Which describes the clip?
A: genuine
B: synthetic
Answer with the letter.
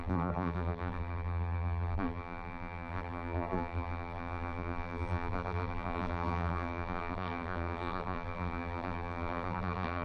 B